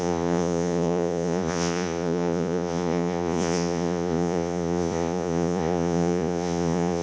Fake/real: fake